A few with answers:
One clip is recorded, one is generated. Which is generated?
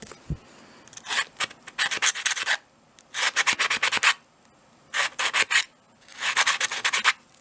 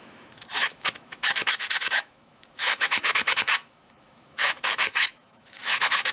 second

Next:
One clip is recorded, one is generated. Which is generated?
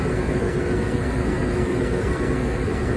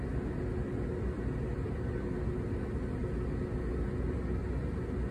first